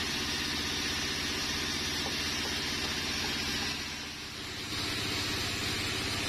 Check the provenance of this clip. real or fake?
real